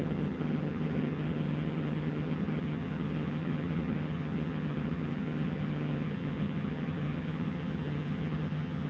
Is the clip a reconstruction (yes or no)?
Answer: yes